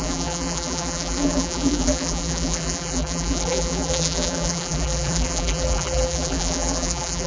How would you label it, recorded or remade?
remade